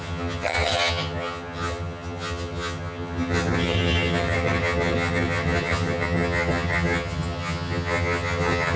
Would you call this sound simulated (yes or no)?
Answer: yes